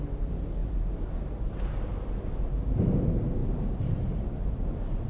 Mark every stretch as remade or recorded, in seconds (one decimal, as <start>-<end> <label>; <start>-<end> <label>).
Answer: 0.0-5.1 recorded